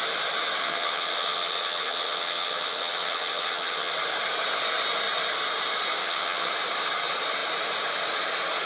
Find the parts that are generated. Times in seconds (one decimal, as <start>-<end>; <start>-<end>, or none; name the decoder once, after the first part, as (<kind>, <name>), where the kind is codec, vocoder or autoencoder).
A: 0.6-3.9 (vocoder, HiFi-GAN); 6.0-6.5